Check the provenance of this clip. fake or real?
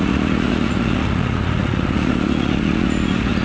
fake